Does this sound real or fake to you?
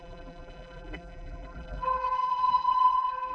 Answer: fake